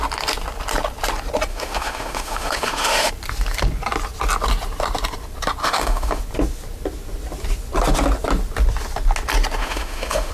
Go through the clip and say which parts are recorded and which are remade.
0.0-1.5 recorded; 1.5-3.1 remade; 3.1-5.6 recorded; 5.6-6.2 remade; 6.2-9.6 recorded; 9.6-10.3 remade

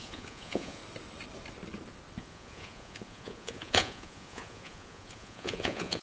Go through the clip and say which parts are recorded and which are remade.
0.0-0.8 remade; 0.8-2.2 recorded; 2.2-6.0 remade

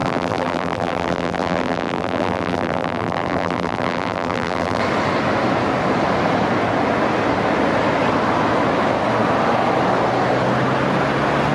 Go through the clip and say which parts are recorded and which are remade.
0.0-4.8 remade; 4.8-11.5 recorded

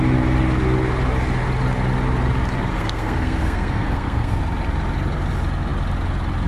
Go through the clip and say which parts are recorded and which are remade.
0.0-2.7 recorded; 2.7-4.4 remade; 4.4-6.5 recorded

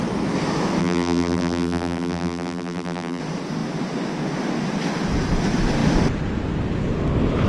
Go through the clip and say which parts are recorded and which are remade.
0.0-0.8 recorded; 0.8-3.2 remade; 3.2-7.5 recorded